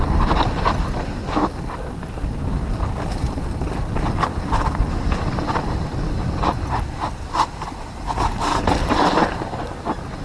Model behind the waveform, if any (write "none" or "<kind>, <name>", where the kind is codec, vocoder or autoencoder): none